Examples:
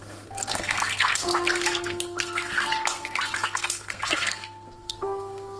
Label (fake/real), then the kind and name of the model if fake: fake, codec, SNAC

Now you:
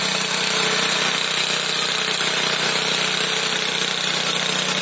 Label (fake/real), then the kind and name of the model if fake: real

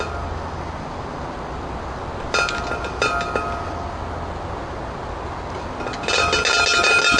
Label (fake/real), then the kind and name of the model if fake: real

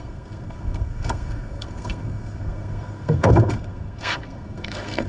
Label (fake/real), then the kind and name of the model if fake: fake, codec, SNAC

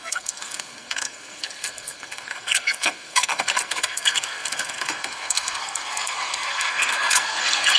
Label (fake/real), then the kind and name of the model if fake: fake, codec, SNAC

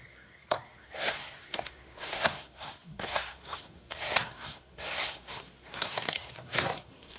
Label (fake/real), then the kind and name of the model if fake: fake, codec, SNAC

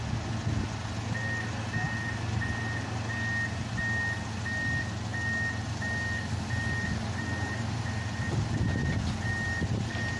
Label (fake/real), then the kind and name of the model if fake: real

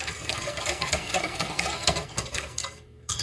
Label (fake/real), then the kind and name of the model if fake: fake, codec, SNAC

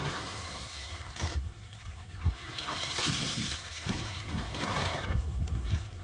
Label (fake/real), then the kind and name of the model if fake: fake, codec, SNAC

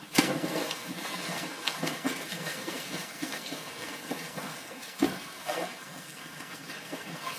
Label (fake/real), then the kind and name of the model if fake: fake, codec, SNAC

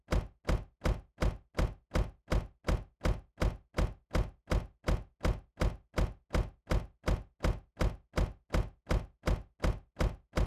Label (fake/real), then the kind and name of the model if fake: real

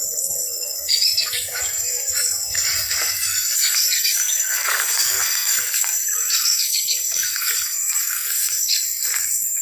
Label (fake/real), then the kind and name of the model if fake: fake, codec, SNAC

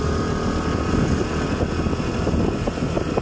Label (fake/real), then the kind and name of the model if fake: real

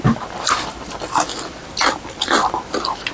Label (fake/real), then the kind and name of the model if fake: real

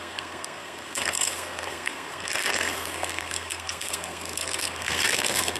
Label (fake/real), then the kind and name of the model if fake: fake, codec, SNAC